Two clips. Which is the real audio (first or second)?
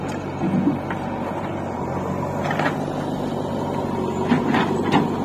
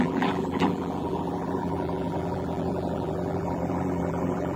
first